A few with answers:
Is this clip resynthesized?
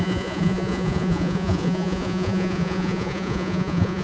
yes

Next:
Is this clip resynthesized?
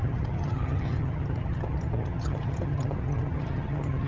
yes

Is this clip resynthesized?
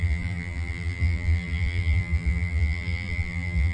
yes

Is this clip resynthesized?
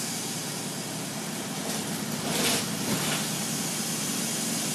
no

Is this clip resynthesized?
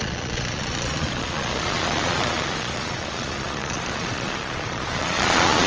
yes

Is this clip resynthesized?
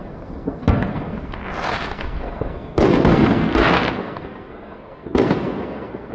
yes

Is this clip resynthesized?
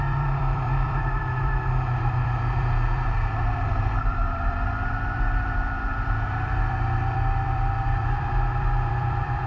yes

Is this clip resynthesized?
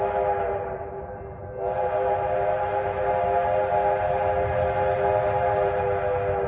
no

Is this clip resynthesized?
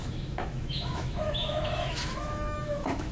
yes